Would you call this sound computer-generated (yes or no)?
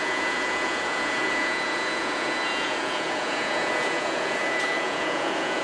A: yes